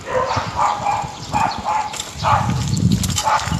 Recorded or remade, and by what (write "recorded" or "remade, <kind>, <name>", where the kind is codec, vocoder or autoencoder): remade, vocoder, BigVGAN v2